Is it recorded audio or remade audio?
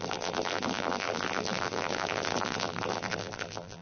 remade